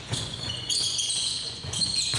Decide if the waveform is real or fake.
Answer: fake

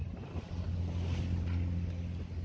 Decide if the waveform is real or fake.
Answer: real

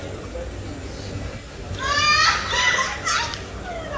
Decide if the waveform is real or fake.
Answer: real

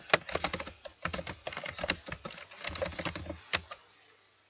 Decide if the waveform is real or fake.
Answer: real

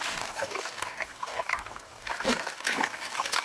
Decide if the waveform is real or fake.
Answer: fake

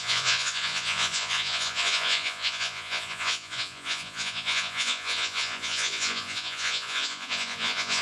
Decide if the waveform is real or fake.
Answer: fake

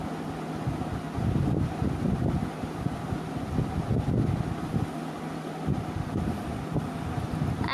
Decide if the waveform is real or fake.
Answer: real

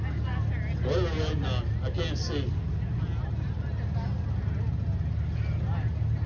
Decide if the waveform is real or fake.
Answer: real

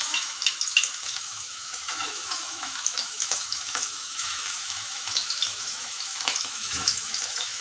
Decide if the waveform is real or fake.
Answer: fake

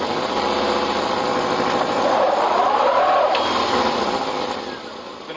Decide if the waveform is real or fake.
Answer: real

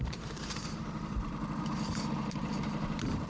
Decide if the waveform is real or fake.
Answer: fake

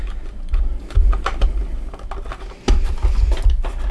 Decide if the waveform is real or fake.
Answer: real